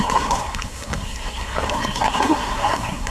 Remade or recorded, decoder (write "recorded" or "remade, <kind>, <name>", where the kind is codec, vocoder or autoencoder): remade, codec, SNAC